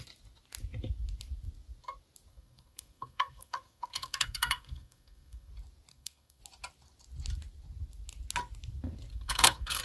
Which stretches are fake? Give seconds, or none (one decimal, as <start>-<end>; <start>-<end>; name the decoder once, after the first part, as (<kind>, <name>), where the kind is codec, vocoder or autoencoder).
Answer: 2.3-5.5 (codec, SNAC); 5.9-6.4; 9.1-9.8